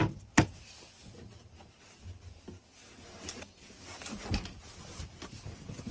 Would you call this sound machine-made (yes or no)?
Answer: no